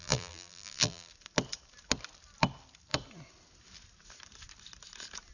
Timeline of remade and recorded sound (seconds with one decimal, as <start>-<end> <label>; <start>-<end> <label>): 0.0-1.1 remade; 1.1-5.3 recorded